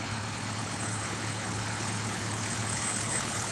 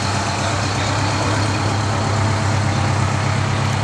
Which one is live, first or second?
second